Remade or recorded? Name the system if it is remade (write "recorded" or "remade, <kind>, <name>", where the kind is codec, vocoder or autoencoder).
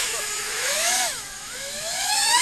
remade, autoencoder, DAC-VAE